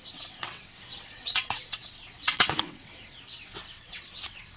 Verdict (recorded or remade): remade